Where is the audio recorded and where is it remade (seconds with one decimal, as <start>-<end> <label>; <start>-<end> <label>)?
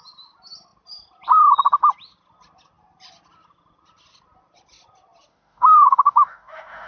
0.0-5.3 recorded; 5.3-6.9 remade